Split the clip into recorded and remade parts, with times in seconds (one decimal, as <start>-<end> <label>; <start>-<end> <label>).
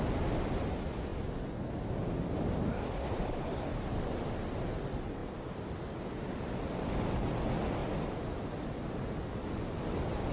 0.0-7.8 recorded; 7.8-8.3 remade; 8.3-10.3 recorded